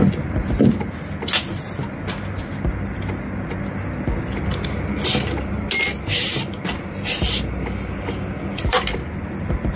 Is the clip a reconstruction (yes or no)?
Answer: no